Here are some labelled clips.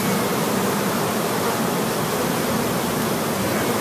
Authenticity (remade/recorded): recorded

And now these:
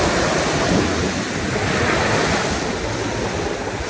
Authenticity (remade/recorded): recorded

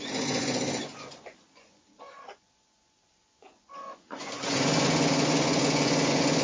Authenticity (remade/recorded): remade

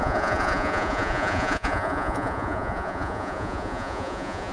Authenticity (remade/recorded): remade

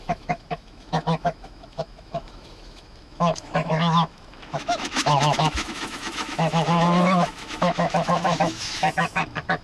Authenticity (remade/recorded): remade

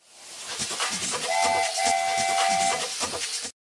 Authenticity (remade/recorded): recorded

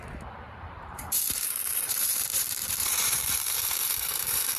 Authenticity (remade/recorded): remade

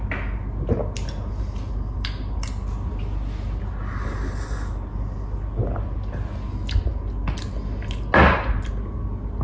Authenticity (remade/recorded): recorded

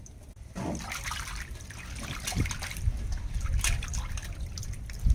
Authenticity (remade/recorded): remade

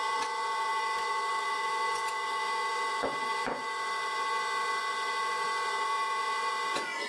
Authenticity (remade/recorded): remade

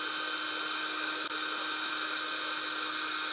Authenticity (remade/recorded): recorded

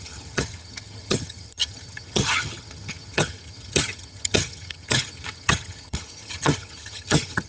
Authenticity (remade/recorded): remade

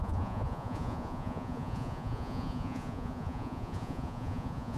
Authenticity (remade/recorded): remade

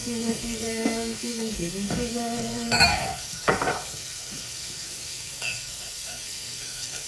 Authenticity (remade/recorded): remade